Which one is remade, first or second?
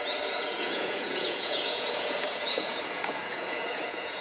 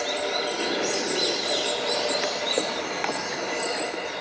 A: first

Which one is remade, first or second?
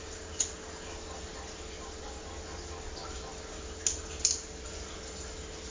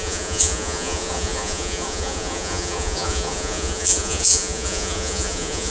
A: second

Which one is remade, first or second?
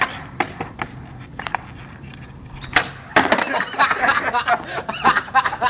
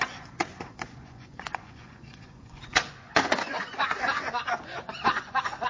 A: second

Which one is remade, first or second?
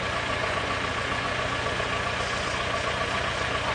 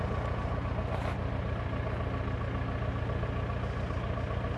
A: first